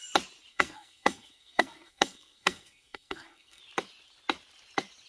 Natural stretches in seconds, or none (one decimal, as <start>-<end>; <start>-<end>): 0.0-0.5; 3.6-5.1